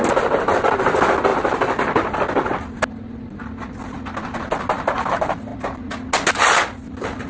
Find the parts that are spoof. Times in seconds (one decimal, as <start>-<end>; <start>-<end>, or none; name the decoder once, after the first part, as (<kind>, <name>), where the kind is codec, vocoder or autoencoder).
none